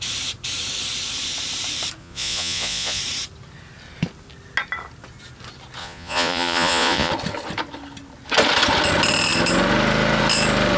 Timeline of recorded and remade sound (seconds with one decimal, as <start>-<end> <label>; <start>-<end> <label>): 0.0-2.0 recorded; 2.0-3.0 remade; 3.0-5.8 recorded; 5.8-7.1 remade; 7.1-10.8 recorded